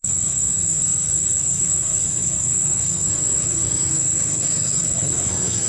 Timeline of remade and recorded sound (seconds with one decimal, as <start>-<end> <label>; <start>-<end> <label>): 0.0-5.7 remade